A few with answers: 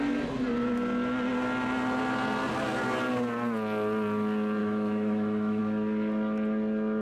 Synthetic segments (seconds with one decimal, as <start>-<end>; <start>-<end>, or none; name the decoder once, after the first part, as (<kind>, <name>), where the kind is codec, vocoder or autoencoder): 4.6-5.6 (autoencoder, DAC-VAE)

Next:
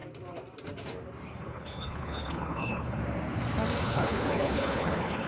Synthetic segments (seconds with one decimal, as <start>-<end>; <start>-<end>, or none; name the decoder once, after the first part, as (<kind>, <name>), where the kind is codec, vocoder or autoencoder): 1.4-3.0 (codec, HILCodec); 3.8-5.3

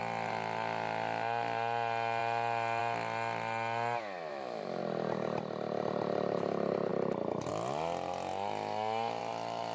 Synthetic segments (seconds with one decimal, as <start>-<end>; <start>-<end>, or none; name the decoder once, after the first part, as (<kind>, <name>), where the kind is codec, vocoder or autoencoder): 4.3-4.8 (autoencoder, DAC-VAE)